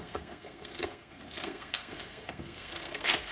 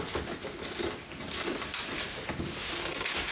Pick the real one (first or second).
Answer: second